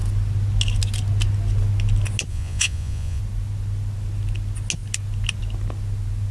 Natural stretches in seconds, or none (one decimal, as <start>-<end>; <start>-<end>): 0.0-2.3; 3.2-6.3